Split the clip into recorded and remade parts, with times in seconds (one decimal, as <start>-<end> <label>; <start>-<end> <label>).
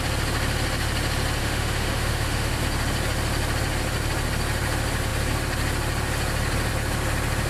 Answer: 0.0-1.4 recorded; 1.4-2.6 remade; 2.6-7.5 recorded